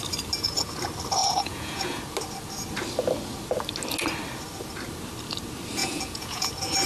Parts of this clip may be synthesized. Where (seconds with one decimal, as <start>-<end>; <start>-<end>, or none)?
1.2-2.0; 5.8-6.5

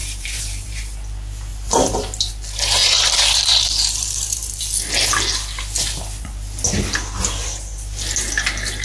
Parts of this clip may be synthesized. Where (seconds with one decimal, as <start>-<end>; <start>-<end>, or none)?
0.0-0.8; 1.5-2.3; 2.8-4.6

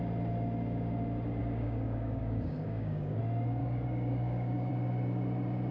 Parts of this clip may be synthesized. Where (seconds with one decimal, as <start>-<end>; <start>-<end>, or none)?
1.4-3.2; 3.6-4.7

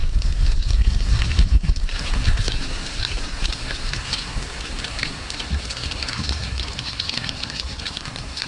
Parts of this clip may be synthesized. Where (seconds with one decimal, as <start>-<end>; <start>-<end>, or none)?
0.0-8.5

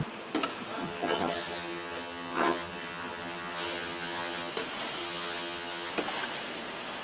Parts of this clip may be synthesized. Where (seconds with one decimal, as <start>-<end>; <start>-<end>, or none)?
0.8-4.5; 5.0-5.9

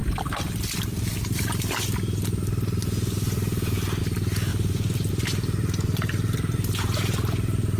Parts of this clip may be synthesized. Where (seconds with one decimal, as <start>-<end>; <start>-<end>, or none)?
none